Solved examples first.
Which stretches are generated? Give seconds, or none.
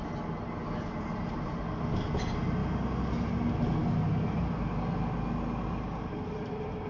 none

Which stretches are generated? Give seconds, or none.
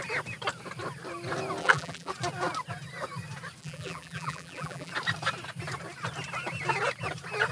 1.6-2.1; 3.6-4.9